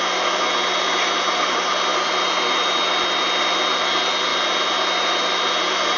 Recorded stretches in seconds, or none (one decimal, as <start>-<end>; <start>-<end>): 0.0-6.0